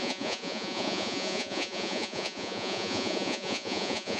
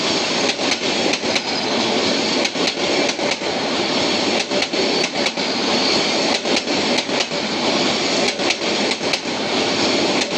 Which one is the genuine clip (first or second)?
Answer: second